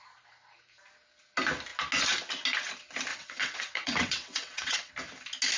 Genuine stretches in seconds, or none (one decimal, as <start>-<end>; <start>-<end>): 0.0-3.1; 4.9-5.6